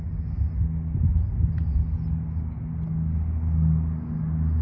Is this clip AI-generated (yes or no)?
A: no